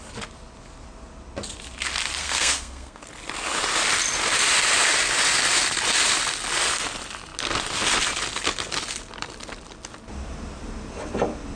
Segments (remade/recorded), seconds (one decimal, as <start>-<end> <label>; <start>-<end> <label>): 0.0-2.2 recorded; 2.2-3.0 remade; 3.0-11.6 recorded